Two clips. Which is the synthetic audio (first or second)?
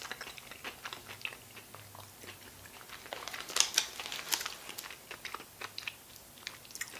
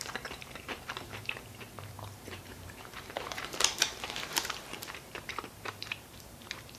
second